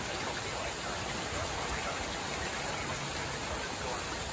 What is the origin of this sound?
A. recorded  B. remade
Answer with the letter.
A